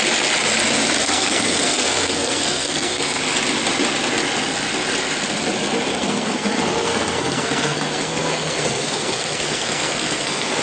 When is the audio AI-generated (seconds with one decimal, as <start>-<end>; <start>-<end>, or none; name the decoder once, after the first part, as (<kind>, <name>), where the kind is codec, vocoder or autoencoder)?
1.0-3.2 (codec, SNAC); 5.9-10.6